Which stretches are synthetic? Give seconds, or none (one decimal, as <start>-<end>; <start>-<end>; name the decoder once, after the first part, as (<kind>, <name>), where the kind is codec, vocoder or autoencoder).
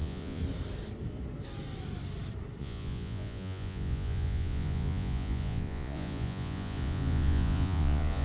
0.0-0.4 (vocoder, Vocos); 2.6-8.2